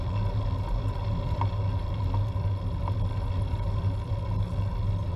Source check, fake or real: real